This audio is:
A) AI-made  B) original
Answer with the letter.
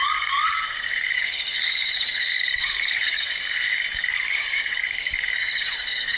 A